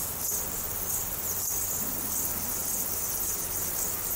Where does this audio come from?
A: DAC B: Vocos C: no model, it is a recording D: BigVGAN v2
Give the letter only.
C